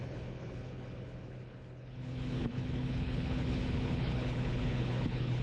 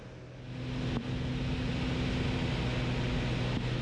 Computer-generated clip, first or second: first